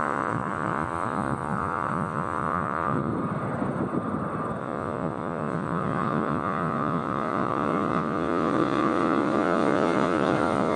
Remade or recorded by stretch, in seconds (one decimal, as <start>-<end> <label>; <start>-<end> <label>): 0.0-3.1 remade; 3.1-4.6 recorded; 4.6-10.8 remade